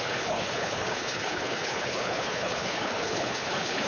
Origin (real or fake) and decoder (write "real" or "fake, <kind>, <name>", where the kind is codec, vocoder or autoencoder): fake, codec, HILCodec